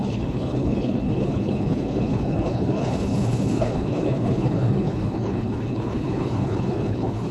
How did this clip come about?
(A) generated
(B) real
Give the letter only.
A